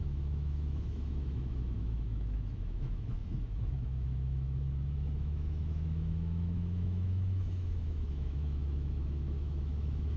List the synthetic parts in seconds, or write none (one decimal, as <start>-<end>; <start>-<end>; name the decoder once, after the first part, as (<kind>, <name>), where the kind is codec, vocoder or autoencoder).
0.0-10.2 (autoencoder, DAC-VAE)